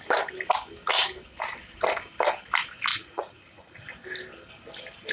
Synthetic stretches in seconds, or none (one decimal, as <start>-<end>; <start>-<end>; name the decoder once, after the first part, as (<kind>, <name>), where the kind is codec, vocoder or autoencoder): 2.9-3.9 (vocoder, Vocos)